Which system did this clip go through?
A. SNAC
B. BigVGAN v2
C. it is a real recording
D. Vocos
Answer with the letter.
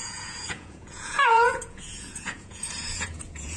D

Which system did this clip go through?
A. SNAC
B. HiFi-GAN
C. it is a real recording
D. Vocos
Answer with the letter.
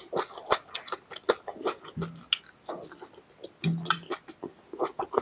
C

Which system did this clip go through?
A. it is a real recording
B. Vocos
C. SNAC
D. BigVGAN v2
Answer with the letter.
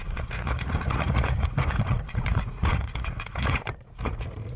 B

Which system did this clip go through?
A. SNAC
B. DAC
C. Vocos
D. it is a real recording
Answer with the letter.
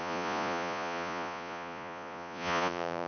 C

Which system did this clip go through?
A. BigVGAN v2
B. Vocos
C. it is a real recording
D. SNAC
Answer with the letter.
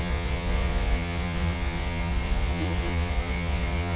B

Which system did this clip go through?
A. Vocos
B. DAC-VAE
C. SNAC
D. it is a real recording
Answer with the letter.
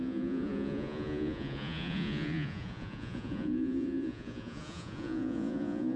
A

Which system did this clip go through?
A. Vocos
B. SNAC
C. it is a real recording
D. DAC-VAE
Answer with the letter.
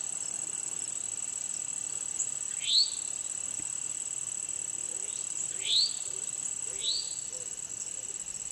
C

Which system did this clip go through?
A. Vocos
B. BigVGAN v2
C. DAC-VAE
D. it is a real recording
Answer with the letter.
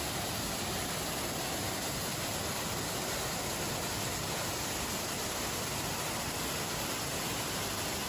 D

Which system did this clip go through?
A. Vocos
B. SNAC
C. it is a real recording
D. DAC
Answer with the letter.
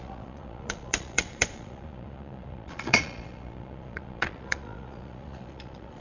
A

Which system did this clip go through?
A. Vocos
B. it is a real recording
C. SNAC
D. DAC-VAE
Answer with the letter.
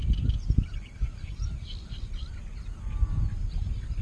B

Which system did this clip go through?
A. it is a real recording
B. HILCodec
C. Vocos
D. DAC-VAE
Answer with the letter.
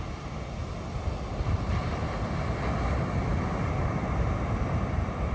A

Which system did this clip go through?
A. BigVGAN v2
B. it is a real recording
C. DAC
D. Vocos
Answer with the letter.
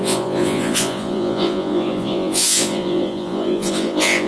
D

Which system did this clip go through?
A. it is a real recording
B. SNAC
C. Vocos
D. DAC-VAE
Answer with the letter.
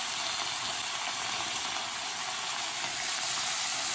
A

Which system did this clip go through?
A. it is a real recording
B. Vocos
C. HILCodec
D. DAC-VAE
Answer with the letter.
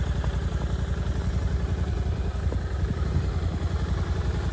A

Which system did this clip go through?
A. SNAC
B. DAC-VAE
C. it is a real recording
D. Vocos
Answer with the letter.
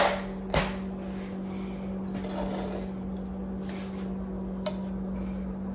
C